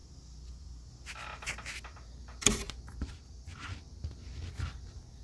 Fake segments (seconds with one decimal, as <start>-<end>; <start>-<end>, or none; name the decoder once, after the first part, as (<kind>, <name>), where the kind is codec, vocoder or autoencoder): none